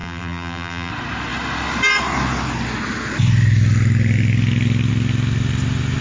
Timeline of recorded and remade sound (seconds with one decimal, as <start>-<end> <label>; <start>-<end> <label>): 0.0-0.9 remade; 0.9-6.0 recorded